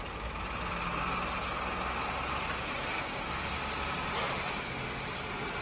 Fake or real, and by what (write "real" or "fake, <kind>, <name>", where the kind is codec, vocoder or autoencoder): real